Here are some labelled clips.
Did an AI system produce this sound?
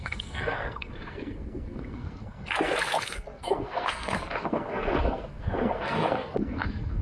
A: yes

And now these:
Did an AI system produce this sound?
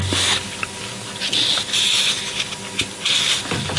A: no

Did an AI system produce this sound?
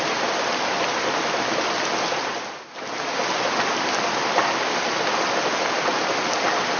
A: no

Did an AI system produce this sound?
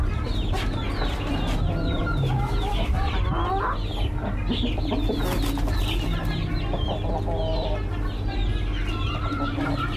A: no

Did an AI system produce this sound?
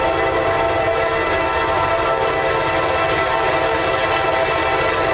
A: no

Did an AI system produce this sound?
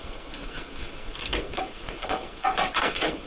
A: yes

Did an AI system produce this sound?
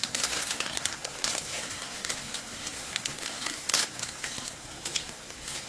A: yes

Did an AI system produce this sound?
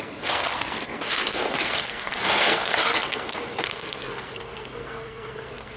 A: yes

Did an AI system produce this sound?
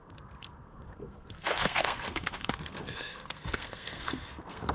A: yes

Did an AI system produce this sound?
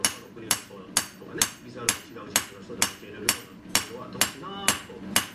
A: no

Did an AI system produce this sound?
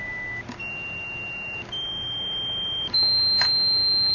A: no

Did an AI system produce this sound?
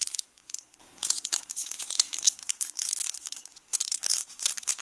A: yes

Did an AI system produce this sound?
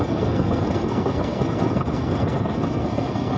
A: yes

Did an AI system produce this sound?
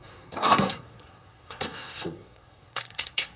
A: yes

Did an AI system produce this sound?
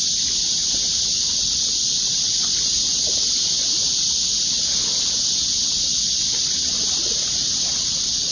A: no